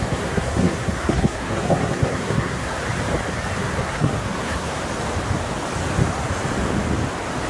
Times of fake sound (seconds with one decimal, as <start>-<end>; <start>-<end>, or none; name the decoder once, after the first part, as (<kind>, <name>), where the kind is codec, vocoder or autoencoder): 0.0-2.8 (codec, SNAC); 3.6-4.8

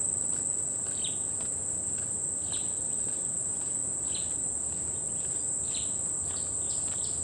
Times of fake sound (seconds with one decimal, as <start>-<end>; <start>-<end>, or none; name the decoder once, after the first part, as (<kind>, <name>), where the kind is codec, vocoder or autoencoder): none

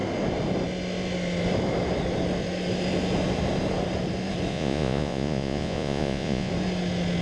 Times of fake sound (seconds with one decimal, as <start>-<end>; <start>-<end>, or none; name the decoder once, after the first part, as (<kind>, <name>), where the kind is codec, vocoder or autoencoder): 4.5-6.5 (vocoder, Vocos)

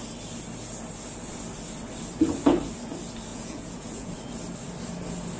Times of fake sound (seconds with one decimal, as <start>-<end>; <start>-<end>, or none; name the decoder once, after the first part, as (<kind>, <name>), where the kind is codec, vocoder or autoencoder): 3.3-4.1 (vocoder, Vocos)

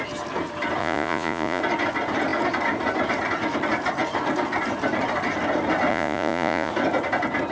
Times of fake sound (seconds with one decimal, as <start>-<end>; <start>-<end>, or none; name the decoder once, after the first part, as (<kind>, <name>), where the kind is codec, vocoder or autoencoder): 0.8-1.6 (vocoder, Vocos); 5.9-6.7

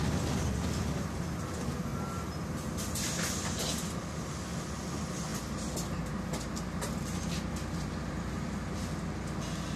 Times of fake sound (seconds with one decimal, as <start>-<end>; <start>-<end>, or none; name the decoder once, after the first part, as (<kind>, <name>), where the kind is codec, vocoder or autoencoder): none

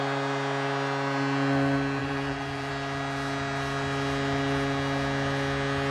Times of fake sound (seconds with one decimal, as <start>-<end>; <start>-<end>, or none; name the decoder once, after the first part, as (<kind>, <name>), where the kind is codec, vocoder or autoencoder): 2.0-2.7 (vocoder, BigVGAN v2)